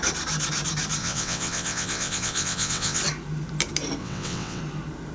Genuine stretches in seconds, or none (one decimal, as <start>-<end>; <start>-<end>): 0.0-1.0; 3.0-4.0; 4.6-5.1